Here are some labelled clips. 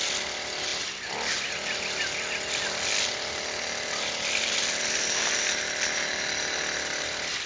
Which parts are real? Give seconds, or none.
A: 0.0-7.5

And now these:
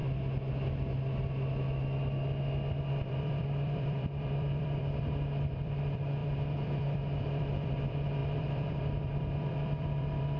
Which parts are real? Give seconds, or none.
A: 0.0-2.9